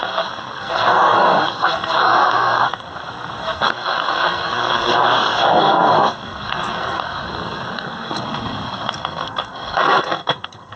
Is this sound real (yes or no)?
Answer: no